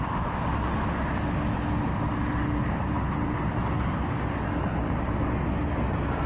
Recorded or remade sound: recorded